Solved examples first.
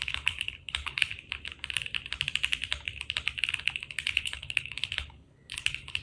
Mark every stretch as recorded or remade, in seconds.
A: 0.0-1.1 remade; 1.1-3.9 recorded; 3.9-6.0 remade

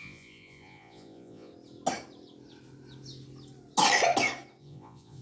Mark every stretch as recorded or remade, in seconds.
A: 0.0-1.5 remade; 1.5-4.6 recorded; 4.6-5.2 remade

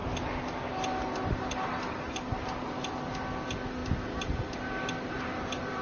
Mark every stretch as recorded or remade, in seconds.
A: 0.0-5.8 recorded